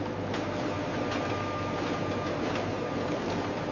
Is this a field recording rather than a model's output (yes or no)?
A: yes